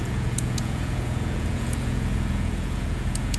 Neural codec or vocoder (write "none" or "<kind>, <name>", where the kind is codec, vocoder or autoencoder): vocoder, Vocos